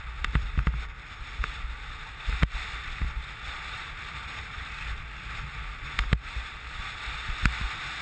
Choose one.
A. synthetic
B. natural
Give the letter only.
B